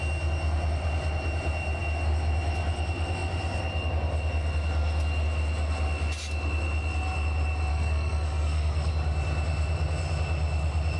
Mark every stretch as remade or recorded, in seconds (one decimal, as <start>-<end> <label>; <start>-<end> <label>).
0.0-7.7 recorded; 7.7-8.9 remade; 8.9-11.0 recorded